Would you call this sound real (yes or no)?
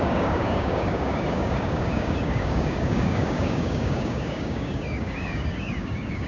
no